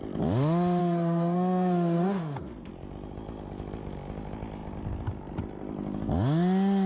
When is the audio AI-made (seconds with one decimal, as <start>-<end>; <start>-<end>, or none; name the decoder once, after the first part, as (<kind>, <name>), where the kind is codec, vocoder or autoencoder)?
0.8-2.7 (codec, SNAC)